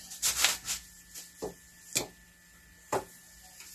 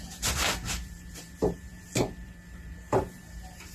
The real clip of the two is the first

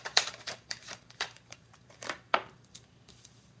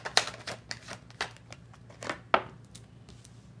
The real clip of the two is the second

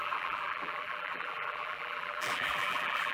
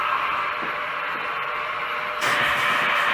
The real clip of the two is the second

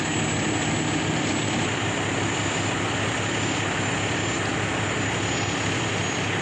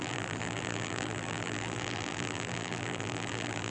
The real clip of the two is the first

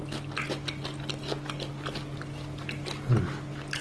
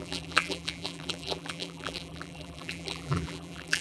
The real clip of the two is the first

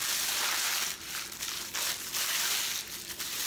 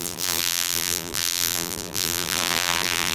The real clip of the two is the first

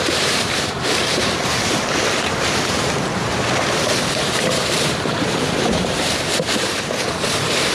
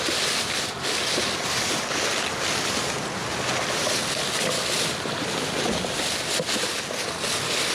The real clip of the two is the second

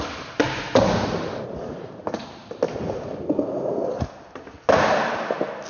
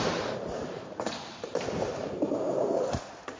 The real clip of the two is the first